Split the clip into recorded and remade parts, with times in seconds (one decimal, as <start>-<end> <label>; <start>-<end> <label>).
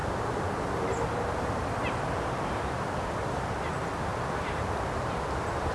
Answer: 0.0-3.4 remade; 3.4-4.1 recorded; 4.1-5.7 remade